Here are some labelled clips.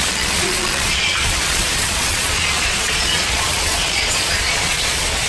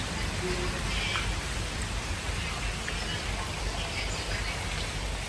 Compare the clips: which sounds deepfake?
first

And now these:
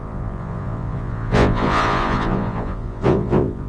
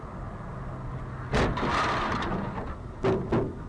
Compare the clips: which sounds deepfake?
first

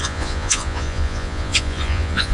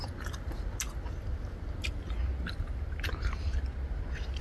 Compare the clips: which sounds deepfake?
first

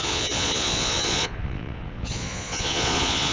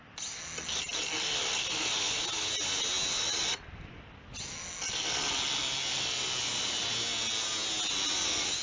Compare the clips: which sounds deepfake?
first